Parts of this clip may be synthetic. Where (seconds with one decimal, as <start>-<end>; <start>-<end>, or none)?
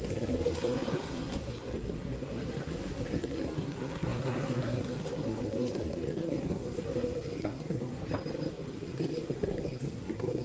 0.0-8.0; 8.5-10.4